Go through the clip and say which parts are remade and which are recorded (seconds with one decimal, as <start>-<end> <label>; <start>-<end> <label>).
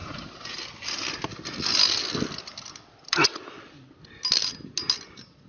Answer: 0.0-5.5 recorded